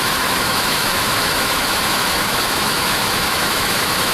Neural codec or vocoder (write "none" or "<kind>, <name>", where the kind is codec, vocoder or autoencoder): autoencoder, DAC-VAE